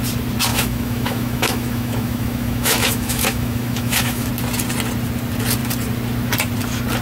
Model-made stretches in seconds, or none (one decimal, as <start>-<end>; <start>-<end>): 0.5-4.3